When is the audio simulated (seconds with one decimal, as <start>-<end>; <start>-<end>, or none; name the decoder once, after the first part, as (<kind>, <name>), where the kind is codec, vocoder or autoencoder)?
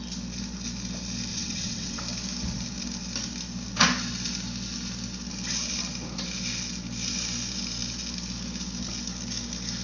1.3-2.0 (vocoder, WaveNeXt)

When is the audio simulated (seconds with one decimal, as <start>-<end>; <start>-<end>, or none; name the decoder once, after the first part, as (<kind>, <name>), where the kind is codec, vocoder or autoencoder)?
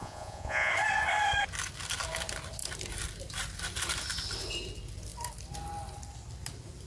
0.0-0.7 (vocoder, Vocos)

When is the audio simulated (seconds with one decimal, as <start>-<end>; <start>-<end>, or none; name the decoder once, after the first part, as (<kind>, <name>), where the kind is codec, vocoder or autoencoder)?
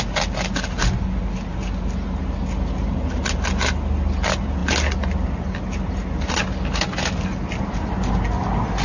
none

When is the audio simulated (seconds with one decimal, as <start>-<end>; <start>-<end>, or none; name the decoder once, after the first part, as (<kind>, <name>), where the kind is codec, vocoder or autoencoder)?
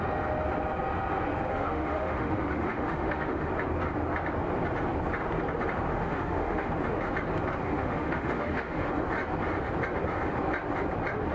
1.5-3.5 (autoencoder, DAC-VAE); 5.9-6.7; 7.6-8.9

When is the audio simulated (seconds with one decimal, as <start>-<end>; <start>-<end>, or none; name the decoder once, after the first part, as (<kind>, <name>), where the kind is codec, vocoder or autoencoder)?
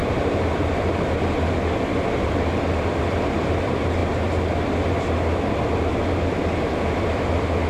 0.0-0.8 (vocoder, BigVGAN v2)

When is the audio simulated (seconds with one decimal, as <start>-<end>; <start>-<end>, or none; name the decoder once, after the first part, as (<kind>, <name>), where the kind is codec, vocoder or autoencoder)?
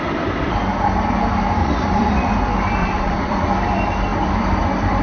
1.6-2.3 (vocoder, Vocos); 2.8-3.5